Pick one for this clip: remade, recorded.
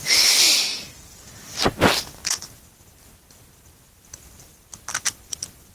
recorded